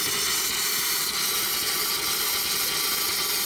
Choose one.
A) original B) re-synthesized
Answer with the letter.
A